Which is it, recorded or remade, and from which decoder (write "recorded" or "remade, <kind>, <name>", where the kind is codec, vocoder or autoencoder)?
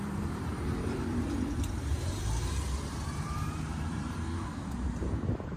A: remade, vocoder, BigVGAN v2